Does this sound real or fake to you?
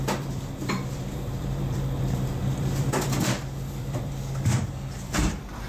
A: fake